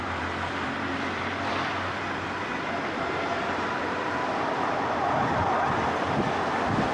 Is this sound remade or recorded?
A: remade